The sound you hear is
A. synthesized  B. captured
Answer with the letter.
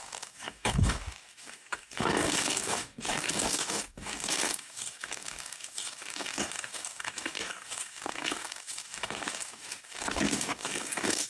A